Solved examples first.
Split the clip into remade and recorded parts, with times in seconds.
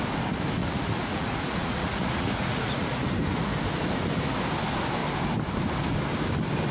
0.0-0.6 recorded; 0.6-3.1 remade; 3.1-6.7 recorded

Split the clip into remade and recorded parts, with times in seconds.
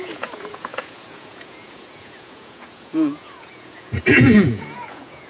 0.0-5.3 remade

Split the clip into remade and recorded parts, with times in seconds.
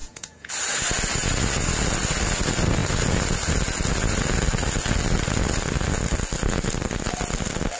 0.0-0.5 remade; 0.5-7.8 recorded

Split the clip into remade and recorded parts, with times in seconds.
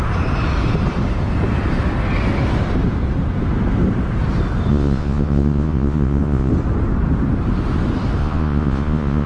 0.0-4.7 recorded; 4.7-6.5 remade; 6.5-8.2 recorded; 8.2-9.3 remade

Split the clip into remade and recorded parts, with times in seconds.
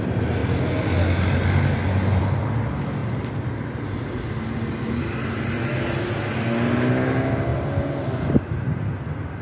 0.0-9.4 recorded